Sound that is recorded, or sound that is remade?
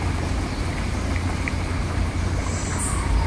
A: recorded